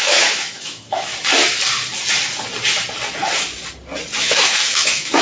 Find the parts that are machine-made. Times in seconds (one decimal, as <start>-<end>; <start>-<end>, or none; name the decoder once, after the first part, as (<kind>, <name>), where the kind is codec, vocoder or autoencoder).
0.0-1.1 (autoencoder, DAC-VAE); 4.2-5.2